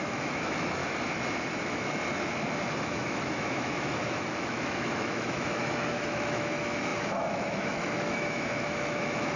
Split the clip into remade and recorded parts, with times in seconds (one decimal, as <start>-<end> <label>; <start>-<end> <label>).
0.0-0.8 remade; 0.8-1.6 recorded; 1.6-2.0 remade; 2.0-2.8 recorded; 2.8-9.4 remade